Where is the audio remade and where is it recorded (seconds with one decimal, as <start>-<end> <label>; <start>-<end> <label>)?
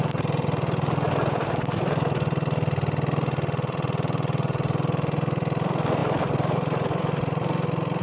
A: 0.0-8.0 remade